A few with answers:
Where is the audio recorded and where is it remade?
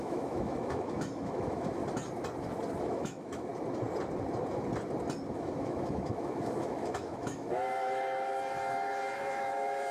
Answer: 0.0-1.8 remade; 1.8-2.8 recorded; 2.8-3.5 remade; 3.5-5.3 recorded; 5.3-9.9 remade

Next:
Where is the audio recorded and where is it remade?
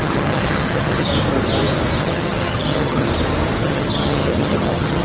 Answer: 0.0-1.1 remade; 1.1-2.0 recorded; 2.0-3.1 remade; 3.1-3.6 recorded; 3.6-5.0 remade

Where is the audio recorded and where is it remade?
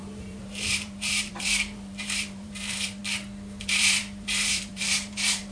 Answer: 0.0-3.0 remade; 3.0-3.6 recorded; 3.6-5.5 remade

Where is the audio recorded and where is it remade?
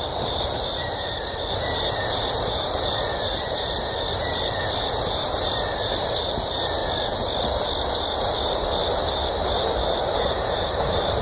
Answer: 0.0-6.8 remade; 6.8-8.0 recorded; 8.0-11.2 remade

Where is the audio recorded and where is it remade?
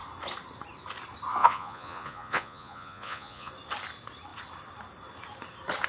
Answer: 0.0-1.4 recorded; 1.4-3.5 remade; 3.5-5.9 recorded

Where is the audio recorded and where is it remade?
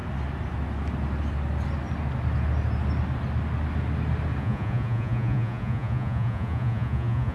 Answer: 0.0-4.4 recorded; 4.4-7.3 remade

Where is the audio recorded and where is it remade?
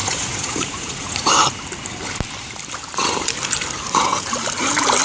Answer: 0.0-1.3 remade; 1.3-5.0 recorded